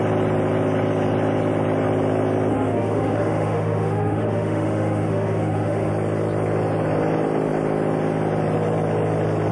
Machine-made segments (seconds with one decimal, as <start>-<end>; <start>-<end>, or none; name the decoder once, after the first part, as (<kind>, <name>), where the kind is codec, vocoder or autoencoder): 2.5-5.9 (autoencoder, DAC-VAE)